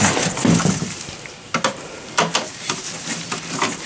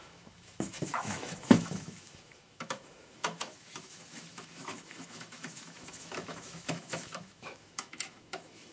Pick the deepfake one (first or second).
second